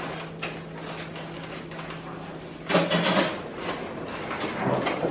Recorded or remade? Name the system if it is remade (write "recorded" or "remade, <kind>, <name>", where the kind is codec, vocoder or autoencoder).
recorded